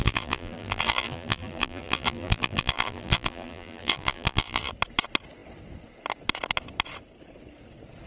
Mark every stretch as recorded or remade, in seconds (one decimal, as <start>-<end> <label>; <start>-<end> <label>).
0.0-4.7 remade; 4.7-8.1 recorded

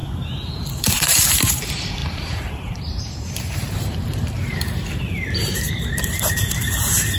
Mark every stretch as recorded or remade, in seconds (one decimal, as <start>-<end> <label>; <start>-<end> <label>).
0.0-0.8 recorded; 0.8-7.2 remade

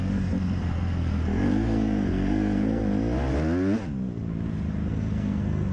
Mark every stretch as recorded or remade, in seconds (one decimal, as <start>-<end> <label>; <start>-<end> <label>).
0.0-2.8 remade; 2.8-4.9 recorded; 4.9-5.7 remade

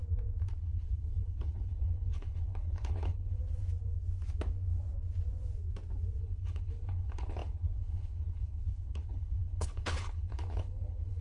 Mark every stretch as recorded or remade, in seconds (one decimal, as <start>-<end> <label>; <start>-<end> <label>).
0.0-0.6 recorded; 0.6-3.4 remade; 3.4-6.2 recorded; 6.2-11.2 remade